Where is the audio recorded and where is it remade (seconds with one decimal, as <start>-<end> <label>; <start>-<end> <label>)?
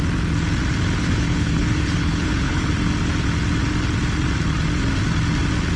0.0-1.0 recorded; 1.0-2.7 remade; 2.7-5.8 recorded